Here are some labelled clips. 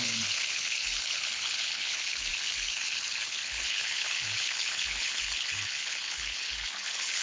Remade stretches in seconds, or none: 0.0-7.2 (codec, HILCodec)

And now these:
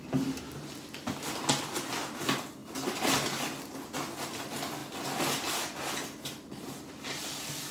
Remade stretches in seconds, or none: none

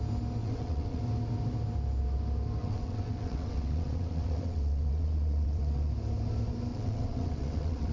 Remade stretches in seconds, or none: 0.4-1.0 (vocoder, WaveNeXt); 2.6-5.9; 6.7-7.9

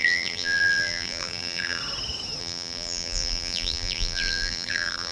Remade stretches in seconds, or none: 0.0-1.8 (vocoder, BigVGAN v2); 2.4-5.1

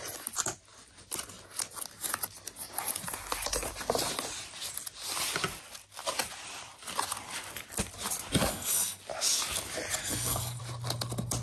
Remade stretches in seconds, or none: 8.5-9.0 (codec, SNAC); 10.0-10.6

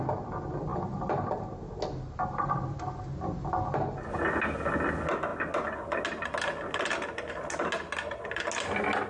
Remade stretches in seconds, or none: none

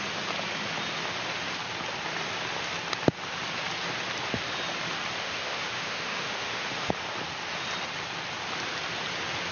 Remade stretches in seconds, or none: 5.2-6.9 (autoencoder, DAC-VAE)

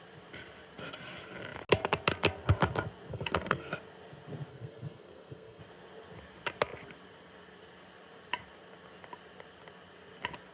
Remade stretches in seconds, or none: 3.1-3.7 (codec, SNAC); 4.5-5.6